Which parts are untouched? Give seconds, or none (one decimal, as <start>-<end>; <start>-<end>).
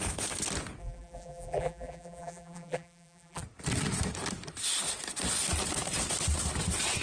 0.0-0.8; 3.4-7.0